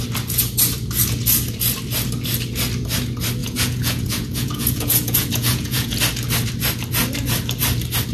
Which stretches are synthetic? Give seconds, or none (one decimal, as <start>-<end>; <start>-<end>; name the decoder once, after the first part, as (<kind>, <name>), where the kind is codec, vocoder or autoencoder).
3.4-6.0 (vocoder, Vocos)

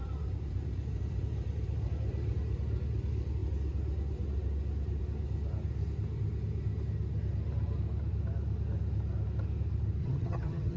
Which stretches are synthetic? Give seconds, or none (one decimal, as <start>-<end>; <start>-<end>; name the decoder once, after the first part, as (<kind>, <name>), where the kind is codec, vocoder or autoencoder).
10.0-10.8 (vocoder, HiFi-GAN)